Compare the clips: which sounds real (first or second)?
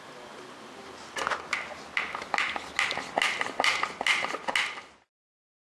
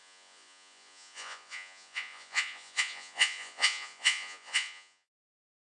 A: first